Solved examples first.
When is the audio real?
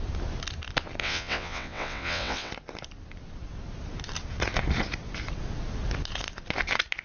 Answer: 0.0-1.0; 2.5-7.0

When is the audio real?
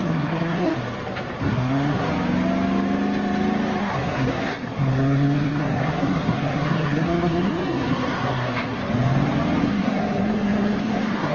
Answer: 0.7-1.4; 2.1-3.8; 8.8-9.6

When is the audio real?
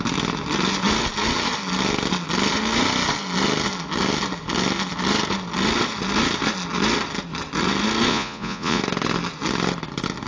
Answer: 0.0-8.1; 8.8-10.3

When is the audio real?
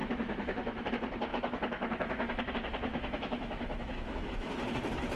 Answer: 0.9-1.3; 2.5-2.9; 4.7-5.2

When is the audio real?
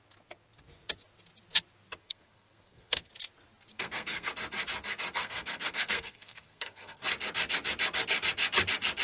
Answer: 0.0-2.0; 3.1-3.7; 4.3-5.2; 7.0-9.0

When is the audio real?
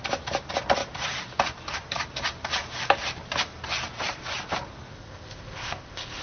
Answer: 0.0-4.9